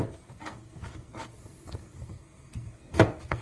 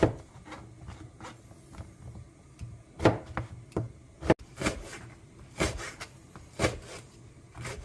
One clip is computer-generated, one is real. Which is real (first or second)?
second